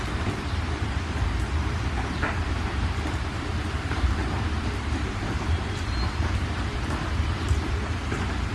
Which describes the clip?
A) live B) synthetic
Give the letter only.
B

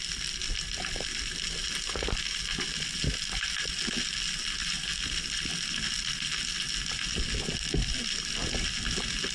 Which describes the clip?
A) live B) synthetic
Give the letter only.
A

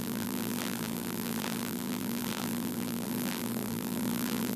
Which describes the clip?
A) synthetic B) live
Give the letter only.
A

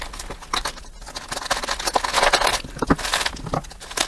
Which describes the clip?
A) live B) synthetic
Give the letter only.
A